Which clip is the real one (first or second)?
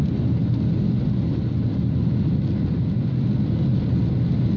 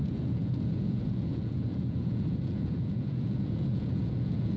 first